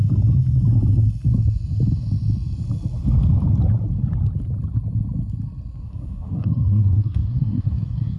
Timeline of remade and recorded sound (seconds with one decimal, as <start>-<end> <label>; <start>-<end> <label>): 0.0-5.8 recorded; 5.8-8.2 remade